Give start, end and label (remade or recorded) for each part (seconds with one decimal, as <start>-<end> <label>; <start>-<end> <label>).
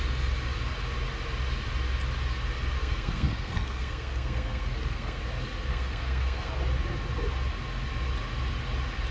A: 0.0-2.8 recorded; 2.8-5.2 remade; 5.2-5.7 recorded; 5.7-6.5 remade; 6.5-9.1 recorded